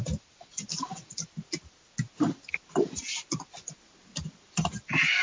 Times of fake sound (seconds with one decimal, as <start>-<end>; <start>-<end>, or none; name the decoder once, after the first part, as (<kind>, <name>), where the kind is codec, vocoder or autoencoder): none